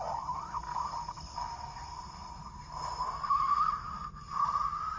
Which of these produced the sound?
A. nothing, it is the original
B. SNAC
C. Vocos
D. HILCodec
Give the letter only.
A